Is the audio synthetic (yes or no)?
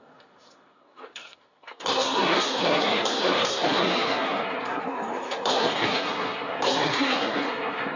yes